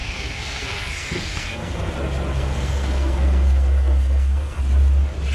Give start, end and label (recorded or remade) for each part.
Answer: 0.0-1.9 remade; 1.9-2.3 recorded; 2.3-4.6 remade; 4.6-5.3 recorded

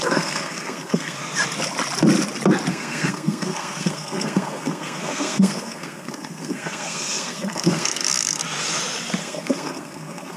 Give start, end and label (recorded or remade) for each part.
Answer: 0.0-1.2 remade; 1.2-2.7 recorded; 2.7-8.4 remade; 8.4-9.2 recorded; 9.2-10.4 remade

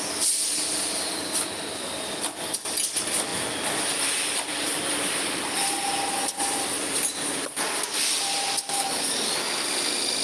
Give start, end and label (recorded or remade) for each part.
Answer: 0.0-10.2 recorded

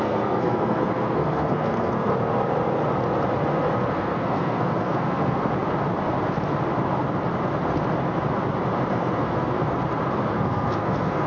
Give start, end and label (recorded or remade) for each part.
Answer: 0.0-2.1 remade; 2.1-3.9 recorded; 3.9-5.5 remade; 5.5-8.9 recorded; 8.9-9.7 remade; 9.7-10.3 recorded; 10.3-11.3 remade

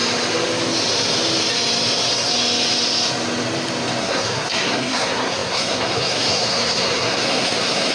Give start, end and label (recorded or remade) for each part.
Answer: 0.0-4.0 recorded; 4.0-7.9 remade

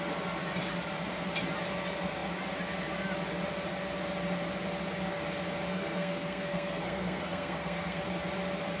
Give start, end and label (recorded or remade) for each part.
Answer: 0.0-5.7 recorded; 5.7-8.0 remade; 8.0-8.8 recorded

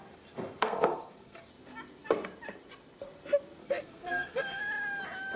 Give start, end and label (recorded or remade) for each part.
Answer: 0.0-0.6 recorded; 0.6-1.4 remade; 1.4-3.6 recorded; 3.6-4.6 remade; 4.6-5.4 recorded

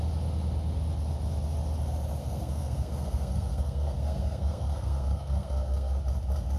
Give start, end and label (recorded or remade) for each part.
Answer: 0.0-2.2 recorded; 2.2-6.0 remade; 6.0-6.6 recorded